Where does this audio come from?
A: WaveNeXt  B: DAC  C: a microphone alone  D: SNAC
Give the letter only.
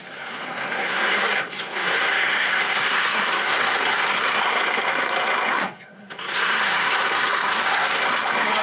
D